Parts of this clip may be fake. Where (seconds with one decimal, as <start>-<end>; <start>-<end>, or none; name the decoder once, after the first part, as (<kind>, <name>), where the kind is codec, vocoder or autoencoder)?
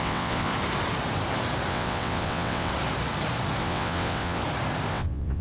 0.0-0.5 (vocoder, WaveNeXt); 1.7-2.7; 3.6-4.4; 4.9-5.4